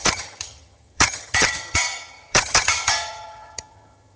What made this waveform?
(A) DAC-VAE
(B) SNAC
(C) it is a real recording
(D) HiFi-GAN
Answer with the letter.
D